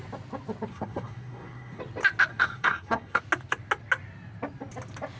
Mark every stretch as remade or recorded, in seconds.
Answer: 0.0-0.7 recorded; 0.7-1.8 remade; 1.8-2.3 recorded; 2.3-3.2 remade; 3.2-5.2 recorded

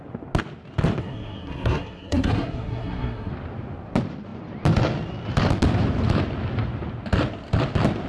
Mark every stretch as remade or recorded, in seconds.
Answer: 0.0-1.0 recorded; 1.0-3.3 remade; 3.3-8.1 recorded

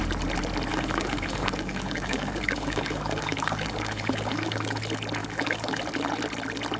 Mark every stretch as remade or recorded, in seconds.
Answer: 0.0-0.7 recorded; 0.7-4.8 remade; 4.8-5.2 recorded; 5.2-5.8 remade; 5.8-6.8 recorded

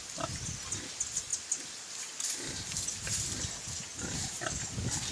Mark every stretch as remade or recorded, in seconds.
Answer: 0.0-5.1 recorded

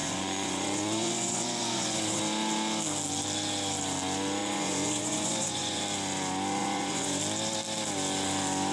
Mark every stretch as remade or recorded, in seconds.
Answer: 0.0-2.2 remade; 2.2-4.4 recorded; 4.4-5.8 remade; 5.8-6.6 recorded; 6.6-7.2 remade; 7.2-8.7 recorded

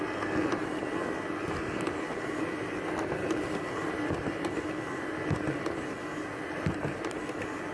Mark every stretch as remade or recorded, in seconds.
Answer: 0.0-7.7 recorded

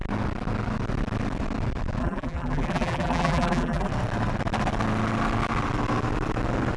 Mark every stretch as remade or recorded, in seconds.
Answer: 0.0-2.0 recorded; 2.0-3.9 remade; 3.9-6.8 recorded

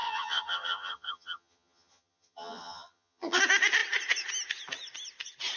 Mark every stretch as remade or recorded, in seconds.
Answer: 0.0-3.4 remade; 3.4-5.6 recorded